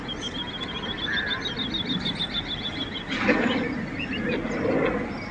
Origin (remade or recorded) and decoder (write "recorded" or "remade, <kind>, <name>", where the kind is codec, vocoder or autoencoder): recorded